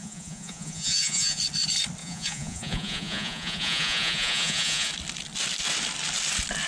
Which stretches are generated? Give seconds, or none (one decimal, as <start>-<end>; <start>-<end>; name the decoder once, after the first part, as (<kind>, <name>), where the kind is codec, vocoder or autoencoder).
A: 0.0-1.4 (vocoder, Vocos); 2.0-4.9